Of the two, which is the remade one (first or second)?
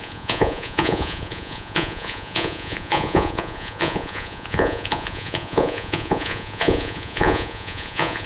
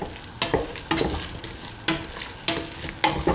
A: first